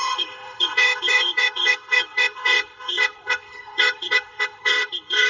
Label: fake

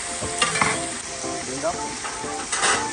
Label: real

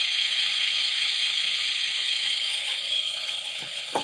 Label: fake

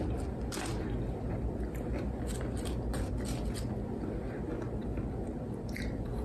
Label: real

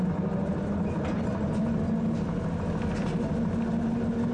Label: real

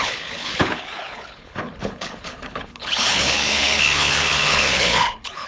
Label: fake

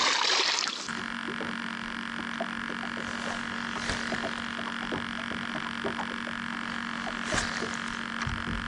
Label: real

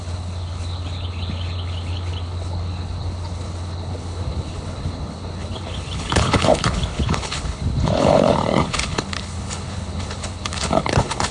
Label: fake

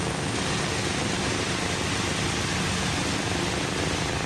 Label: real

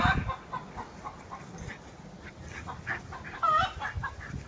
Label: real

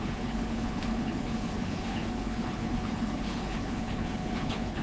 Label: fake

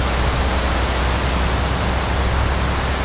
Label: real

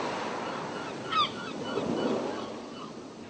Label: real